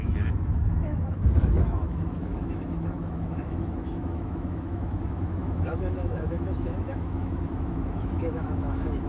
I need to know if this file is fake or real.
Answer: fake